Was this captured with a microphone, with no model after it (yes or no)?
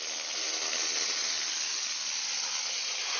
yes